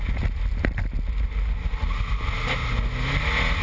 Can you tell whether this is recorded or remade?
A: recorded